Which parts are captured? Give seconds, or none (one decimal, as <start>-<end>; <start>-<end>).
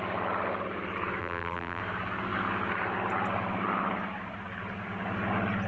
0.0-1.2; 1.8-5.7